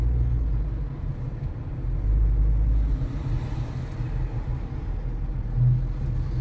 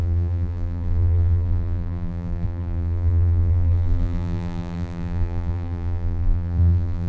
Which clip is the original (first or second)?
first